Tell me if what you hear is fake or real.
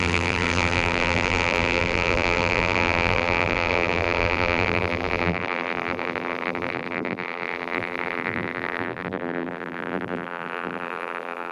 fake